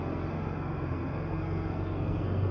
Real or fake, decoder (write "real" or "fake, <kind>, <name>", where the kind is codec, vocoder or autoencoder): fake, codec, SNAC